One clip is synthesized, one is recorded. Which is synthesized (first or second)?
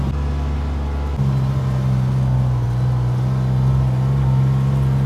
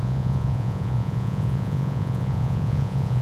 second